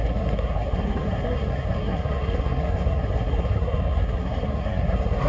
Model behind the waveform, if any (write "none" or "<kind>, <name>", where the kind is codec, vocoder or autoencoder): codec, SNAC